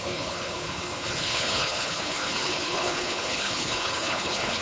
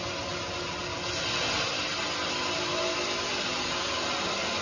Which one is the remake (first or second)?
first